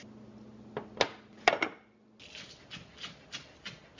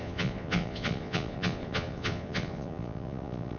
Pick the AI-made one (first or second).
second